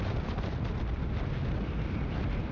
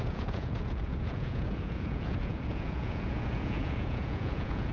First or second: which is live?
first